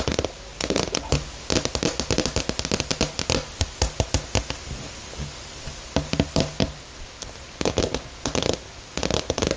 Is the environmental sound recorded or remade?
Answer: recorded